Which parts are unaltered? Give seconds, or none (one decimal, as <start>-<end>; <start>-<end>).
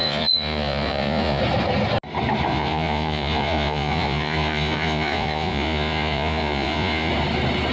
1.4-2.5; 7.1-7.7